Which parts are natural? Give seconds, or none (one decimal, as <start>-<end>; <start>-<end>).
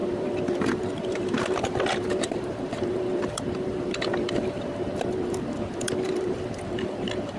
none